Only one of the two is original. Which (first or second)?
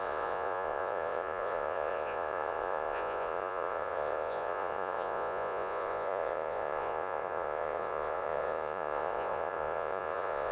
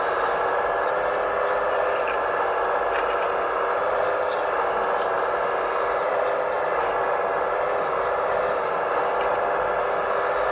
second